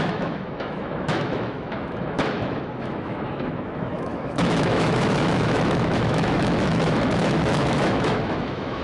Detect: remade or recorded remade